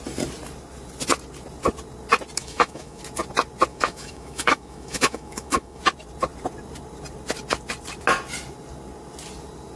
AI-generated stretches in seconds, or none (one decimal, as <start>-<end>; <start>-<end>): 2.4-3.0; 3.7-5.8